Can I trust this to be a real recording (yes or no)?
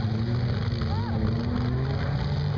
yes